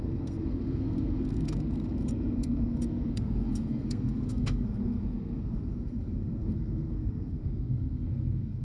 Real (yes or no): no